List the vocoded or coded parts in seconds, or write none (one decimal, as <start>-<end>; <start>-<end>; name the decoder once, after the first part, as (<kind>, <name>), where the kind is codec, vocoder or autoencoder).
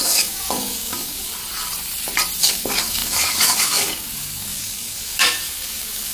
0.0-1.4 (codec, DAC); 2.4-6.1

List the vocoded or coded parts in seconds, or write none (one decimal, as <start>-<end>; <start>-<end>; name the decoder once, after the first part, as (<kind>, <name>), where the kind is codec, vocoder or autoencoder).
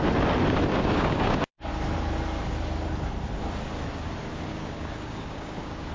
0.7-1.7 (codec, DAC); 4.5-5.9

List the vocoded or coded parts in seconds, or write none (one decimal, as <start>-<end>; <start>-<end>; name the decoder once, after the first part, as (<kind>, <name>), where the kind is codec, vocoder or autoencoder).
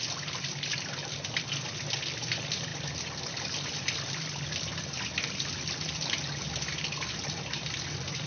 none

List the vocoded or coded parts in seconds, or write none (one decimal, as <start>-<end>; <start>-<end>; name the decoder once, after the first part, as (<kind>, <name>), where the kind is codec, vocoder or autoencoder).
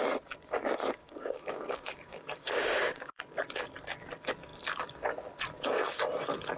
1.0-3.2 (codec, DAC)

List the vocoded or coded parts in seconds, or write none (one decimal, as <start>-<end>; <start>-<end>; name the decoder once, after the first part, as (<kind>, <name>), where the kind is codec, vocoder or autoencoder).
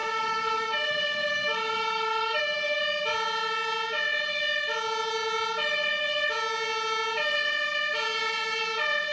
0.0-2.8 (codec, DAC)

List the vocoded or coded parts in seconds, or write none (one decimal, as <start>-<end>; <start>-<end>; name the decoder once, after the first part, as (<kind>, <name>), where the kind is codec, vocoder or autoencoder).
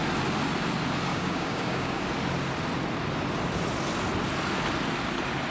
1.1-2.0 (codec, DAC)